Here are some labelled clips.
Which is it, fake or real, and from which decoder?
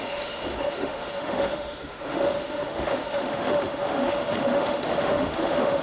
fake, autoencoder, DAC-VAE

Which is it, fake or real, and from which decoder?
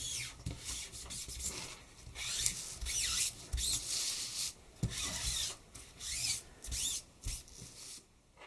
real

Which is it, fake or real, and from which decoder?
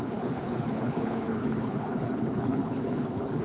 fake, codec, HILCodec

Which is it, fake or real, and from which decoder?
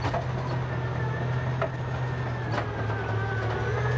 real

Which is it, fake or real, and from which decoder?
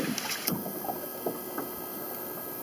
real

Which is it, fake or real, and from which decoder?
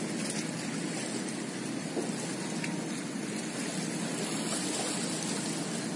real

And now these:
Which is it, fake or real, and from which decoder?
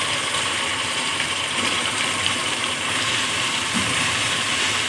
fake, vocoder, BigVGAN v2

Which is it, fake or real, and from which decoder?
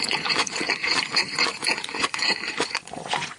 fake, vocoder, Vocos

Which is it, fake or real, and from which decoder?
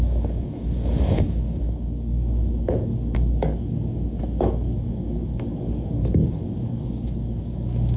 fake, codec, DAC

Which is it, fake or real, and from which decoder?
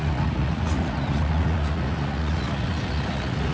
fake, vocoder, Vocos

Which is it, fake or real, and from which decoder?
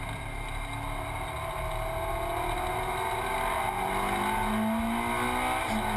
real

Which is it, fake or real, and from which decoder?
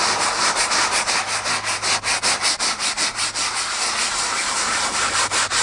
real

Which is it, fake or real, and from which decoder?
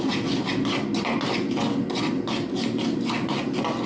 real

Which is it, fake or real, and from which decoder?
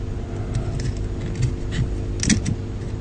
real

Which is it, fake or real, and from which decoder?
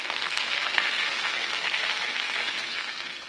fake, codec, SNAC